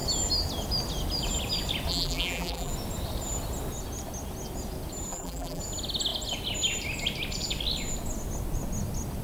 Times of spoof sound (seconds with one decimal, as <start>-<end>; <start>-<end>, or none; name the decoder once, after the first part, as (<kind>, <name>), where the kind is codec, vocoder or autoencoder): 1.9-2.7 (vocoder, BigVGAN v2); 5.1-5.6